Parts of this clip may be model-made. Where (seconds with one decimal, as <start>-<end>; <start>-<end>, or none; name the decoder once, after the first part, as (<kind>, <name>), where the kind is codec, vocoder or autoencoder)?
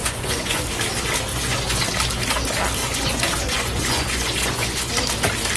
0.0-0.6 (vocoder, Vocos); 1.3-1.8; 2.8-4.9